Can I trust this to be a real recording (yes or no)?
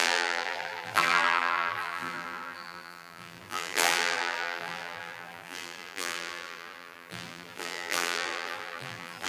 no